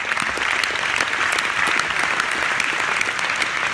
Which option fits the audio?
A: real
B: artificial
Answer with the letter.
A